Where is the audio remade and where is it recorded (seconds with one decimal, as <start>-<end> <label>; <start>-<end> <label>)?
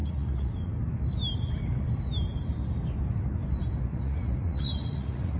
0.0-0.7 remade; 0.7-3.9 recorded; 3.9-5.4 remade